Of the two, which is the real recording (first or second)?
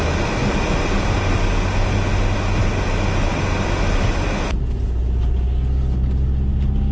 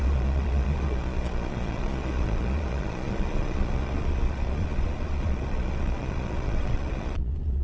first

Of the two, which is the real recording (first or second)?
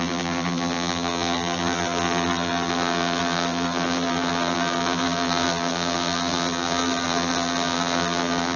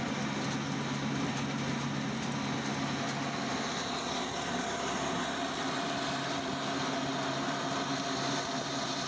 second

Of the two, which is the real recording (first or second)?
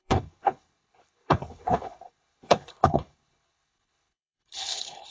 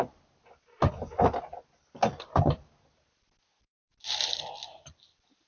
second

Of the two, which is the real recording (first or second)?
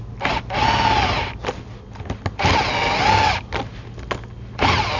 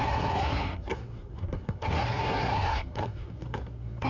first